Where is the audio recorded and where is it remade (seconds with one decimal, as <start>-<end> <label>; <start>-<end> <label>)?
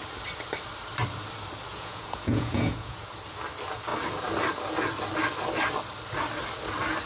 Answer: 0.0-1.7 recorded; 1.7-3.0 remade; 3.0-7.1 recorded